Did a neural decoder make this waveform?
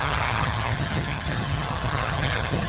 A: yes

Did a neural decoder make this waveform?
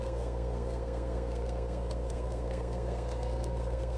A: yes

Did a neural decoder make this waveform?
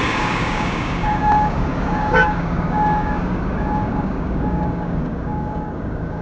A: yes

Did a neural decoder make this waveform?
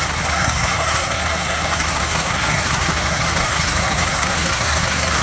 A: yes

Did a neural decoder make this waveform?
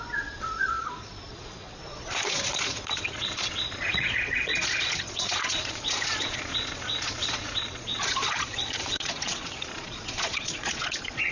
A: yes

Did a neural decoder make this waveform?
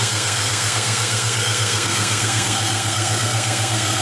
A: yes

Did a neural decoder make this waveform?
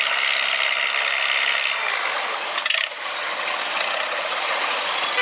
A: no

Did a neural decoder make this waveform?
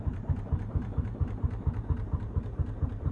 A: yes